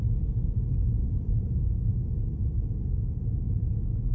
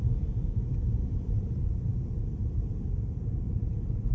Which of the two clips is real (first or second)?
first